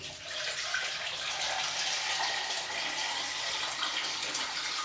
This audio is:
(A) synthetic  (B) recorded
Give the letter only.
B